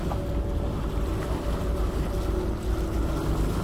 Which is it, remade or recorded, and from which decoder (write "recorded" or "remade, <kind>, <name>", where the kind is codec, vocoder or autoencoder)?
recorded